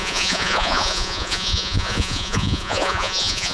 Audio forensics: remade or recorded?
remade